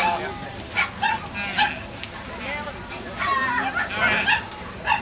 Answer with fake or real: real